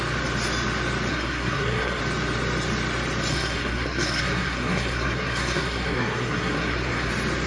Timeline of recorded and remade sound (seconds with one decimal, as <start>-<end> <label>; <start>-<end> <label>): 0.0-1.1 recorded; 1.1-2.0 remade; 2.0-3.3 recorded; 3.3-7.1 remade; 7.1-7.5 recorded